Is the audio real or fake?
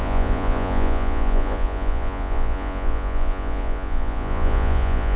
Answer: fake